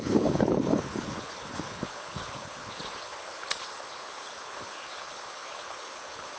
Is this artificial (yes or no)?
yes